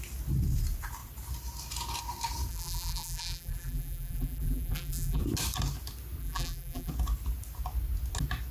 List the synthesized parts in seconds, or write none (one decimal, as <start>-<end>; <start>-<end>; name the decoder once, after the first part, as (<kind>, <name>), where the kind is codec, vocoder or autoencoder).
2.5-5.2 (vocoder, BigVGAN v2); 6.2-6.9